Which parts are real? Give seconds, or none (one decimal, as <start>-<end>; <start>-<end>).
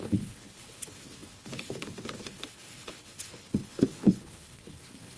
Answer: none